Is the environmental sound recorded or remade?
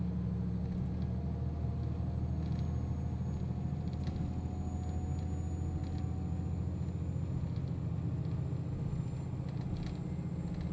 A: recorded